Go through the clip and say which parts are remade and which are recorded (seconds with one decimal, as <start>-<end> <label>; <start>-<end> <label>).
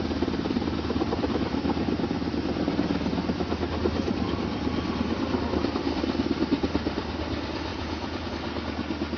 0.0-7.7 recorded; 7.7-8.3 remade; 8.3-9.2 recorded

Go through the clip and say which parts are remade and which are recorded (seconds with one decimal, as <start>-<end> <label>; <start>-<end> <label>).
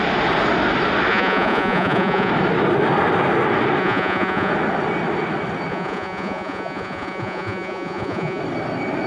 0.0-1.1 recorded; 1.1-2.3 remade; 2.3-3.8 recorded; 3.8-4.5 remade; 4.5-5.7 recorded; 5.7-8.4 remade; 8.4-9.1 recorded